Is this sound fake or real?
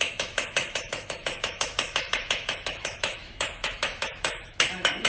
fake